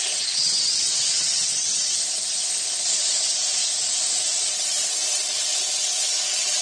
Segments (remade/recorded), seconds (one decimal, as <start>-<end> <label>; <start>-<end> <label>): 0.0-2.0 remade; 2.0-3.2 recorded; 3.2-3.6 remade; 3.6-4.5 recorded; 4.5-6.6 remade